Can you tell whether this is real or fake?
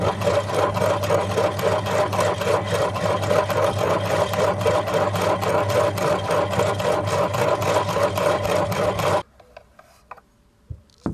real